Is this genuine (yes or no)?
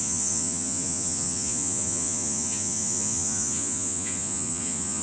no